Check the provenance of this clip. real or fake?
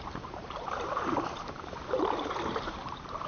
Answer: fake